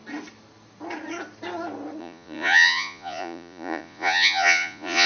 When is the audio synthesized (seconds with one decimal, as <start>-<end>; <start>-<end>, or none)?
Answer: 2.0-5.1